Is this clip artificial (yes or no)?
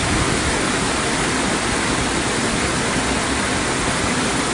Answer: no